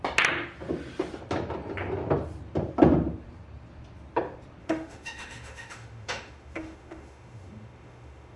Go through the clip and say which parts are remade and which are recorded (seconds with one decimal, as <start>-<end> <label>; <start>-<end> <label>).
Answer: 0.0-4.6 recorded; 4.6-8.4 remade